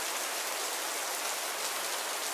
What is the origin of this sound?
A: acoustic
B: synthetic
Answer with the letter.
A